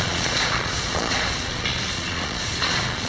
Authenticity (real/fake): fake